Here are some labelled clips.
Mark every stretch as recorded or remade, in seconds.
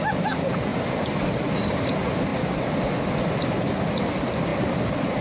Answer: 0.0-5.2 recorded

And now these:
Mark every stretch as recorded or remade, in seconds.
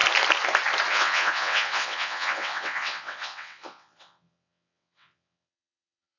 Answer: 0.0-0.9 recorded; 0.9-6.2 remade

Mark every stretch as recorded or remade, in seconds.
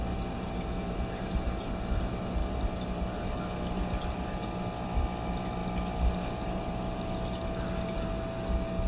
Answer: 0.0-8.9 recorded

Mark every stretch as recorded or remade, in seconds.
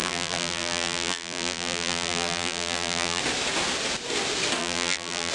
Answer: 0.0-3.2 remade; 3.2-4.6 recorded; 4.6-5.3 remade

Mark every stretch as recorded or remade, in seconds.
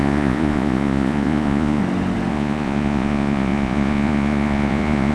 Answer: 0.0-1.8 remade; 1.8-2.3 recorded; 2.3-5.1 remade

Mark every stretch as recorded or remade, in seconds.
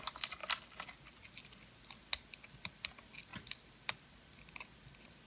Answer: 0.0-5.3 recorded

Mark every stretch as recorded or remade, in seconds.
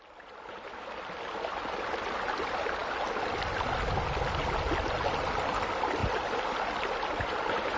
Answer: 0.0-6.0 recorded; 6.0-7.8 remade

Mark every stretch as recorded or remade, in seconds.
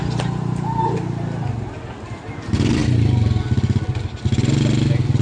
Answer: 0.0-5.2 recorded